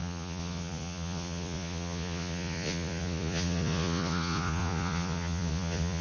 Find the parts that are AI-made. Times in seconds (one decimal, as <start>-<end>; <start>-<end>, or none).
0.0-6.0